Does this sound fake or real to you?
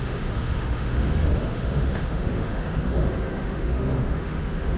fake